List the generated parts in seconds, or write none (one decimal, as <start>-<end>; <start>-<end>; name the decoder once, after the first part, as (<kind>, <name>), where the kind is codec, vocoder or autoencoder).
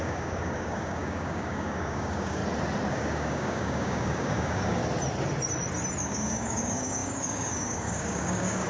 0.0-2.4 (codec, DAC); 2.9-4.8; 6.0-8.7